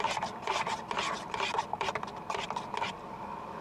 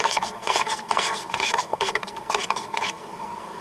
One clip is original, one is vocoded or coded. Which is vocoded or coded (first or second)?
second